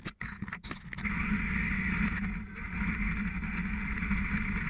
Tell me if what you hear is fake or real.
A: real